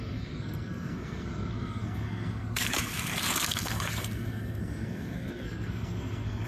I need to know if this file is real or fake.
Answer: fake